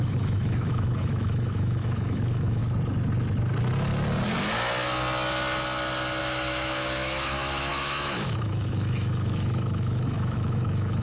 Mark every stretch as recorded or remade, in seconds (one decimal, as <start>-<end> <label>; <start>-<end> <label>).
0.0-2.6 remade; 2.6-6.2 recorded; 6.2-11.0 remade